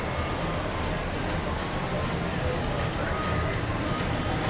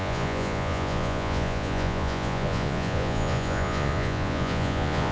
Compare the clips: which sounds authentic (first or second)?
first